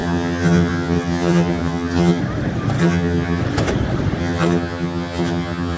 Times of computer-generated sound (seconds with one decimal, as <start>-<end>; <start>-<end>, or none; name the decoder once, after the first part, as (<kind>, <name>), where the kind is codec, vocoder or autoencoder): 0.0-2.2 (vocoder, HiFi-GAN); 2.8-3.4; 4.2-5.8